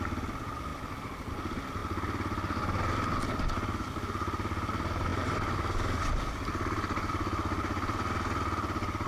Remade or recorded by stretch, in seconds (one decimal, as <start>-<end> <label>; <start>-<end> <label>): 0.0-0.7 remade; 0.7-1.3 recorded; 1.3-1.8 remade; 1.8-3.9 recorded; 3.9-9.1 remade